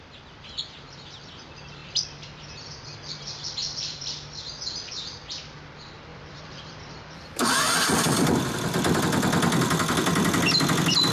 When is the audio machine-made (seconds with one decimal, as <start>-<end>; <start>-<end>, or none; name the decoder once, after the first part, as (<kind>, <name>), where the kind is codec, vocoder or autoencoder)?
1.8-2.4 (vocoder, BigVGAN v2); 3.6-4.5; 6.1-9.0